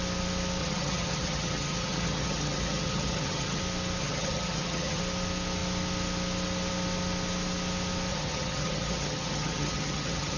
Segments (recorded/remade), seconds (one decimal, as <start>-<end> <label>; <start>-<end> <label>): 0.0-0.6 recorded; 0.6-3.6 remade; 3.6-4.0 recorded; 4.0-5.0 remade; 5.0-8.1 recorded; 8.1-10.4 remade